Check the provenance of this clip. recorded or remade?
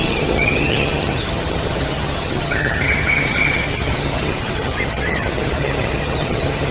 remade